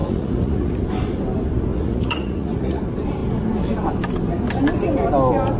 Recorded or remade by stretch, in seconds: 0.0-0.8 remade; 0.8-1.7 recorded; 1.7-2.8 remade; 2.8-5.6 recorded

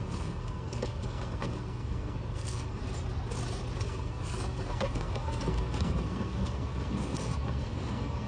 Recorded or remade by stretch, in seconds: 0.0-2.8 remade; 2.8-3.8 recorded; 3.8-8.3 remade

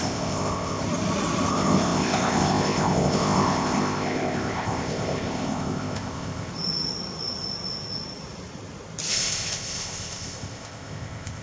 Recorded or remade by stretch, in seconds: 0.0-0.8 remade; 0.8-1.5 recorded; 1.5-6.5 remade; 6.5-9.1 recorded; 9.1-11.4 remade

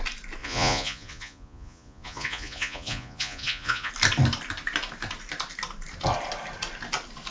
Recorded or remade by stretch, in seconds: 0.0-0.4 recorded; 0.4-3.9 remade; 3.9-7.3 recorded

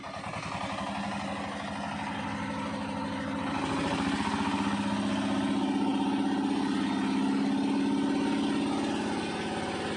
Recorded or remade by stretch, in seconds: 0.0-10.0 recorded

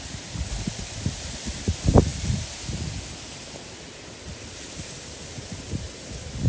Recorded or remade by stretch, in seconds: 0.0-6.5 recorded

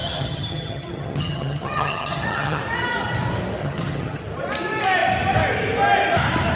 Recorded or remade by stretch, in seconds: 0.0-2.6 remade; 2.6-3.6 recorded; 3.6-4.2 remade; 4.2-6.5 recorded